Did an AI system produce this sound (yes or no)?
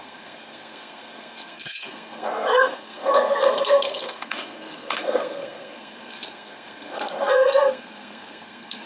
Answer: yes